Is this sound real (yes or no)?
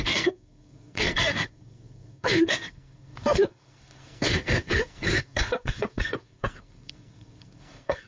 no